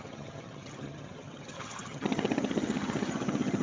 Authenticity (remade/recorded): remade